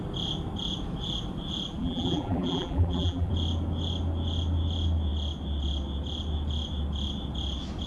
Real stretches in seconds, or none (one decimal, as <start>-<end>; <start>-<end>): 0.0-1.8; 3.3-7.9